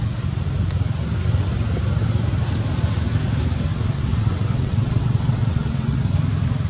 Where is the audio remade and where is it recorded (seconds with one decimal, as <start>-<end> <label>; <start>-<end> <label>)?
0.0-3.7 recorded; 3.7-6.0 remade; 6.0-6.7 recorded